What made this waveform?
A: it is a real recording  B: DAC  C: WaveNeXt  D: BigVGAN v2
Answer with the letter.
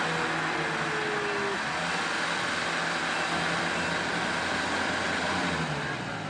A